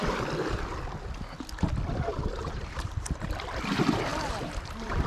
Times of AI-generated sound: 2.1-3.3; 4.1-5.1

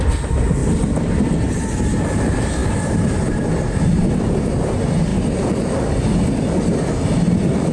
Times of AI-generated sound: 0.6-1.4; 2.6-4.2

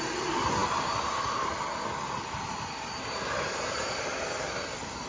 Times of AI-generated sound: 0.0-5.1

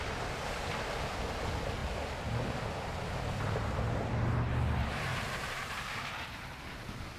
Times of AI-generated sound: 5.1-7.2

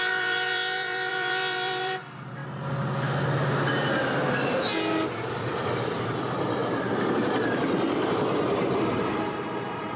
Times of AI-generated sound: 0.0-2.4; 5.3-6.6; 8.1-10.0

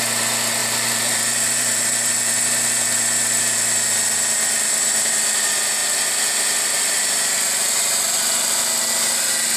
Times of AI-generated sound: 0.6-2.3

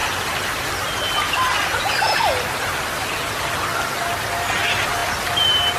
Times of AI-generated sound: 0.0-3.5

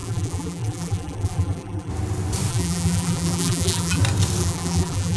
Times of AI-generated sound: 0.0-1.9; 2.5-4.0; 4.4-5.2